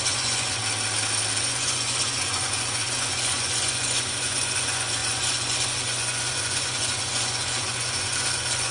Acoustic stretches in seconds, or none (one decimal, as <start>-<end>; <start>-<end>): 0.6-1.4